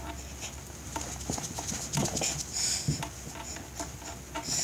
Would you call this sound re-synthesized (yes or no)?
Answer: no